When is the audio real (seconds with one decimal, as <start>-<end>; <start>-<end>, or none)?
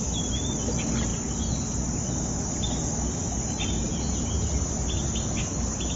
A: 0.0-3.9; 4.4-6.0